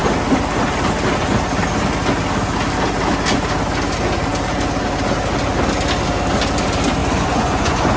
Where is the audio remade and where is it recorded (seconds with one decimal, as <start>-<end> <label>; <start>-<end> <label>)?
0.0-7.0 recorded; 7.0-8.0 remade